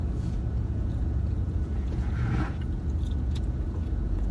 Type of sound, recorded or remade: remade